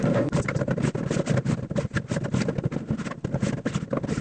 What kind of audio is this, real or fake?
real